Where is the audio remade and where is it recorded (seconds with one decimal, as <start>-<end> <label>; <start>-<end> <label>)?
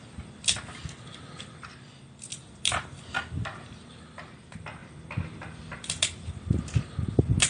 0.0-7.5 recorded